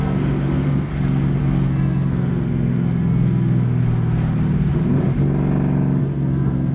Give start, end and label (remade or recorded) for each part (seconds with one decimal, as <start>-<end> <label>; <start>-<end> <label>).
0.0-0.9 remade; 0.9-1.4 recorded; 1.4-3.8 remade; 3.8-6.0 recorded; 6.0-6.7 remade